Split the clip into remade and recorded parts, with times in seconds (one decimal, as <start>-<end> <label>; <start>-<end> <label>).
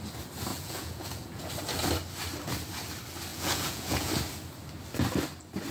0.0-0.5 recorded; 0.5-1.5 remade; 1.5-3.3 recorded; 3.3-4.1 remade; 4.1-5.7 recorded